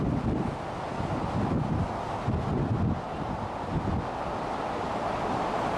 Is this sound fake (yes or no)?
no